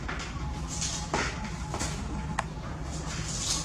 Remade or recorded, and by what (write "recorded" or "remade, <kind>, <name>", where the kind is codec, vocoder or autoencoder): recorded